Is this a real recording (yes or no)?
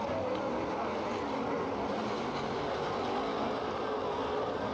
yes